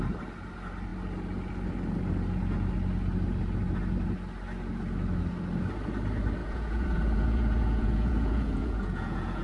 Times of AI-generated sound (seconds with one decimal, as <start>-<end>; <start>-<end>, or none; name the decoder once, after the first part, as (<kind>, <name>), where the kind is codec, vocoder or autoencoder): 6.4-9.4 (vocoder, Vocos)